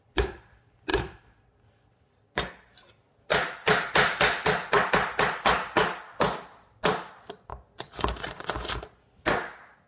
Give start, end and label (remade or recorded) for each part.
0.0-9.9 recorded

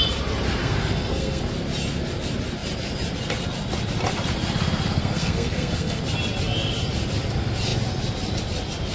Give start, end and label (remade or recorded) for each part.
0.0-0.6 recorded; 0.6-1.4 remade; 1.4-5.0 recorded; 5.0-6.0 remade; 6.0-8.9 recorded

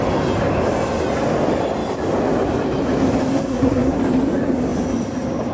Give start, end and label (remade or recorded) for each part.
0.0-3.3 recorded; 3.3-4.0 remade; 4.0-5.5 recorded